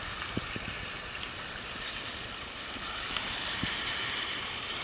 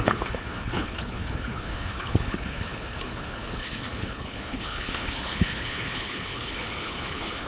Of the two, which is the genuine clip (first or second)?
first